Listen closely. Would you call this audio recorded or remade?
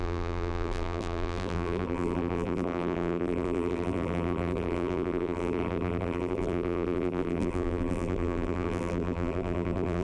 remade